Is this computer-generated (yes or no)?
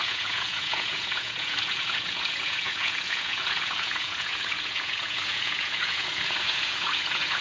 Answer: yes